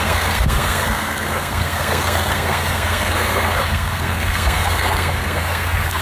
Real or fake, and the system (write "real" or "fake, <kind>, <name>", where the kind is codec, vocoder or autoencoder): fake, codec, SNAC